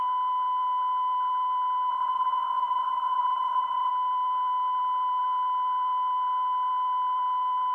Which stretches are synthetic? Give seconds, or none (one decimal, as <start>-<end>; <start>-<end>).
1.9-3.9